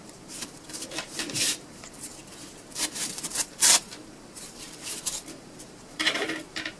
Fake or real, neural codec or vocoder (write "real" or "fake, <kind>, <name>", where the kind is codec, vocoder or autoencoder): fake, vocoder, BigVGAN v2